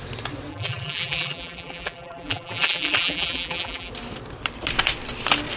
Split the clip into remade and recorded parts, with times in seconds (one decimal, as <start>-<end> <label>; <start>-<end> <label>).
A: 0.0-0.5 recorded; 0.5-3.9 remade; 3.9-5.6 recorded